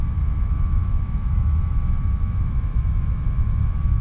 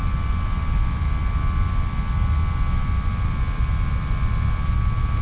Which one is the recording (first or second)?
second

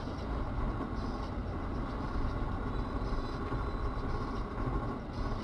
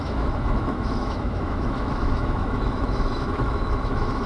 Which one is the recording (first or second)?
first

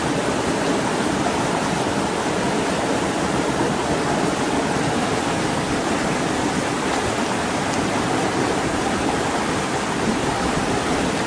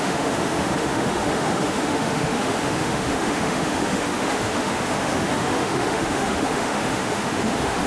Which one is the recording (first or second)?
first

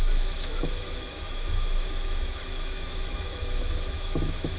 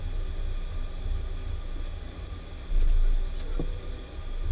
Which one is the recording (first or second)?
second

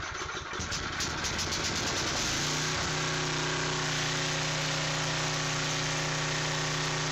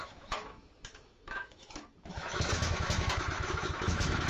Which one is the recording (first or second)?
first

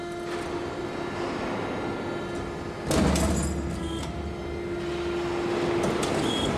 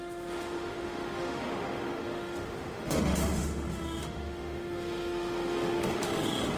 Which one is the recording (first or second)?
first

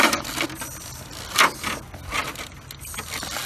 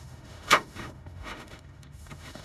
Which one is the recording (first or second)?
first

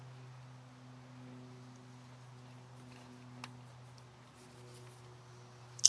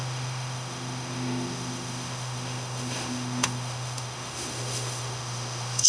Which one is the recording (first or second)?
first